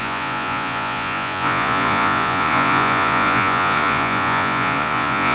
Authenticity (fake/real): fake